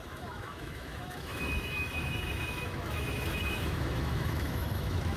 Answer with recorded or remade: remade